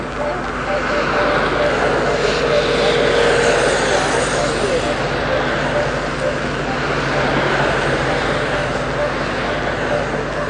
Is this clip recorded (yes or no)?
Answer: yes